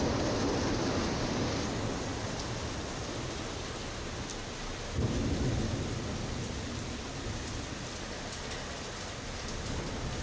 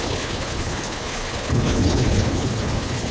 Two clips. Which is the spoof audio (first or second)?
second